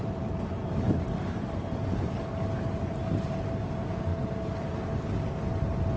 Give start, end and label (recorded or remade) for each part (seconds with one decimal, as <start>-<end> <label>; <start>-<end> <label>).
0.0-6.0 recorded